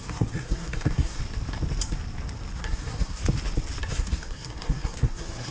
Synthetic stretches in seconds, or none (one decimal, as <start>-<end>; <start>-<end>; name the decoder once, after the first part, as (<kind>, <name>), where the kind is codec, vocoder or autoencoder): 0.0-1.2 (codec, SNAC); 2.6-3.2; 3.9-5.5